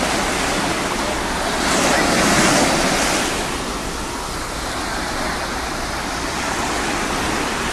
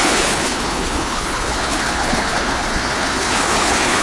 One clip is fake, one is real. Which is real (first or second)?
first